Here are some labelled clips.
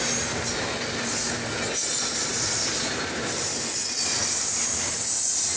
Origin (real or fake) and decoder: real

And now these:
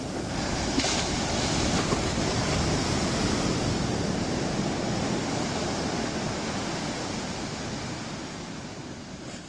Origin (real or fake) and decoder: real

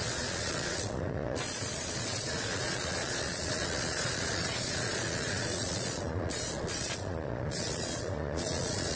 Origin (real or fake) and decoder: fake, vocoder, Vocos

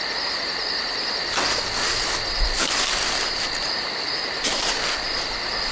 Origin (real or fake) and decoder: real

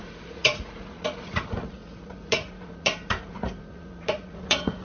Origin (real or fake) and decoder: fake, vocoder, Vocos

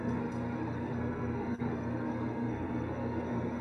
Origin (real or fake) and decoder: fake, codec, SNAC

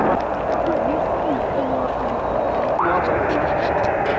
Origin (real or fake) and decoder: real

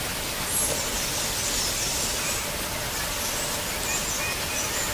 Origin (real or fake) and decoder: real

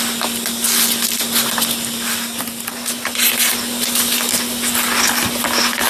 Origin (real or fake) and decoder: real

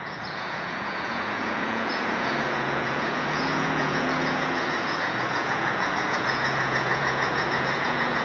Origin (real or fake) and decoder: fake, vocoder, Vocos